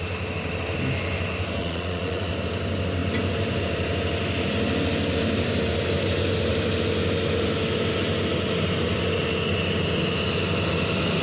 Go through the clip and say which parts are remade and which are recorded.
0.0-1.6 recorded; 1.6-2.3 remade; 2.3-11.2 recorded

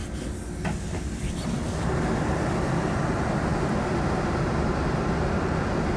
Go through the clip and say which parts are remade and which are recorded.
0.0-6.0 recorded

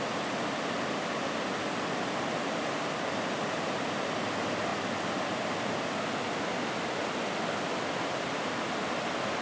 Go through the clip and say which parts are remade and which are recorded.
0.0-9.4 recorded

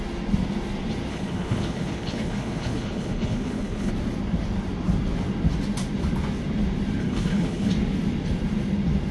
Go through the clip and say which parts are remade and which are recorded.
0.0-1.1 recorded; 1.1-3.9 remade; 3.9-7.0 recorded; 7.0-7.7 remade; 7.7-9.1 recorded